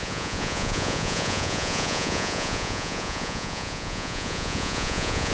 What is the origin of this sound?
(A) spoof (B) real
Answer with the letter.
A